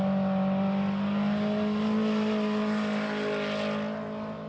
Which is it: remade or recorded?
recorded